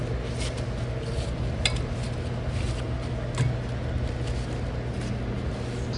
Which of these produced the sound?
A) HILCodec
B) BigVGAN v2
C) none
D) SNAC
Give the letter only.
C